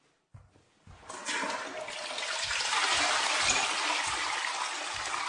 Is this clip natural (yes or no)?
yes